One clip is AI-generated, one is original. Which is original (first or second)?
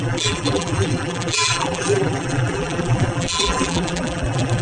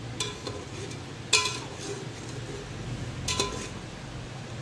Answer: second